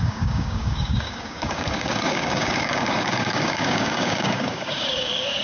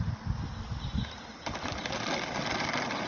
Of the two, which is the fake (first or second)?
first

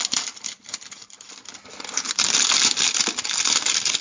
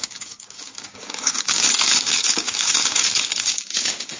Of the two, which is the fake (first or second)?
second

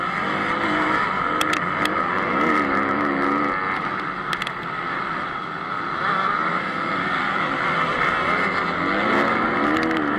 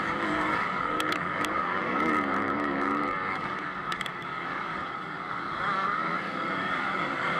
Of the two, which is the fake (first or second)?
second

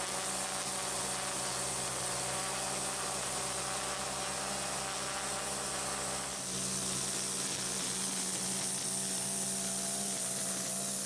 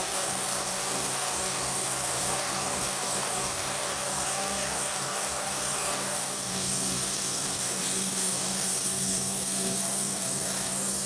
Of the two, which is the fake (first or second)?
second